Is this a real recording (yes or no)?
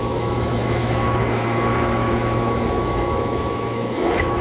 no